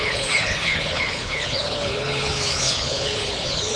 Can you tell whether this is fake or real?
fake